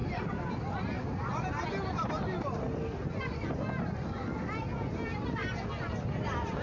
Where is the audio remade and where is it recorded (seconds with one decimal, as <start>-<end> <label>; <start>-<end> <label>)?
0.0-6.6 recorded